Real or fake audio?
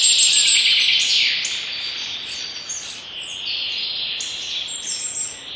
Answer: real